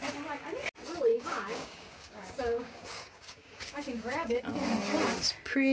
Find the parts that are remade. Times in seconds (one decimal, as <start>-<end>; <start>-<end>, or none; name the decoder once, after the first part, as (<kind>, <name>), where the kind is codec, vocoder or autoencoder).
1.1-4.4 (codec, DAC)